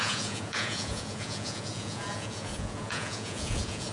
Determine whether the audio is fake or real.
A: fake